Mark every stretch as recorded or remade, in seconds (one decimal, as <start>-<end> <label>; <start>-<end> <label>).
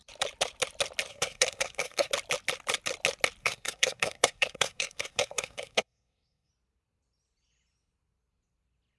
0.0-1.1 recorded; 1.1-2.1 remade; 2.1-3.4 recorded; 3.4-6.5 remade; 6.5-9.0 recorded